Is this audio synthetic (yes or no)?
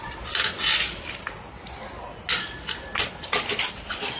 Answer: no